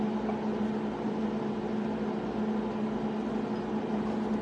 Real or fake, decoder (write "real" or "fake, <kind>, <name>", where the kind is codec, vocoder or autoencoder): real